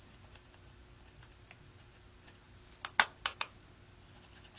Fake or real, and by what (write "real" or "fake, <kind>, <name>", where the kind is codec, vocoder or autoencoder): real